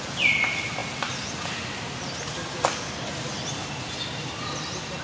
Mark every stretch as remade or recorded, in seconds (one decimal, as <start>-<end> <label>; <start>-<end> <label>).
0.0-5.0 recorded